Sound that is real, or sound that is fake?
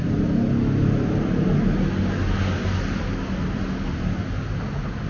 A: real